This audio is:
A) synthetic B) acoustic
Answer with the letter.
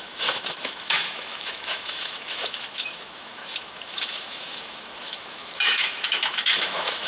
A